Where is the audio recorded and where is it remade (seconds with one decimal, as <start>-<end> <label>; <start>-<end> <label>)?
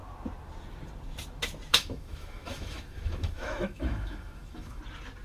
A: 0.0-1.7 recorded; 1.7-4.8 remade; 4.8-5.2 recorded